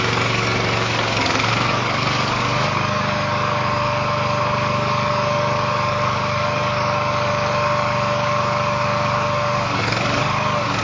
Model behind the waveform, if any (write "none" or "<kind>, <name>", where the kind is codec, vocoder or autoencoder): codec, DAC